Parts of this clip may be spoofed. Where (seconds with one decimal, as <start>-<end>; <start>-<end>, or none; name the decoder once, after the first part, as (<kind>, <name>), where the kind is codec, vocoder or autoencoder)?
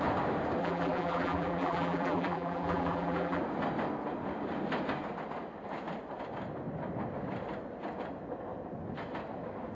0.6-3.4 (vocoder, BigVGAN v2)